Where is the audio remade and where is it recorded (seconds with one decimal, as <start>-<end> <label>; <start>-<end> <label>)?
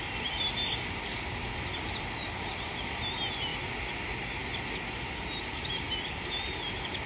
0.0-1.7 recorded; 1.7-2.7 remade; 2.7-7.1 recorded